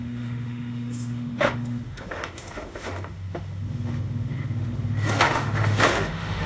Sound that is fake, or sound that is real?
fake